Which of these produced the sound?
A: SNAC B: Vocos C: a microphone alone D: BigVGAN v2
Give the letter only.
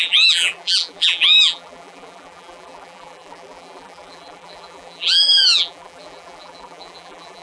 D